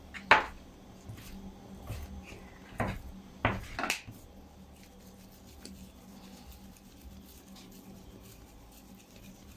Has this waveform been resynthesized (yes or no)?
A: no